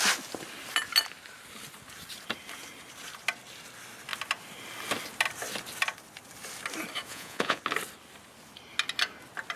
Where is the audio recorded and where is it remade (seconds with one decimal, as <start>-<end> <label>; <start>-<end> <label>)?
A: 0.0-7.1 recorded; 7.1-7.6 remade; 7.6-9.6 recorded